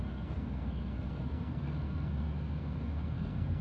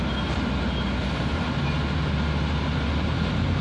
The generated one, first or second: first